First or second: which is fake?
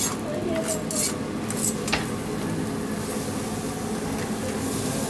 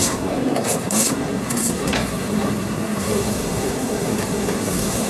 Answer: second